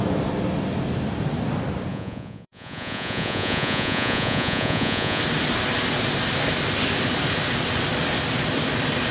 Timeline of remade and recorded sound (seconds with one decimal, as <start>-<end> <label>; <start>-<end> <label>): 0.0-1.9 recorded; 1.9-5.2 remade; 5.2-9.1 recorded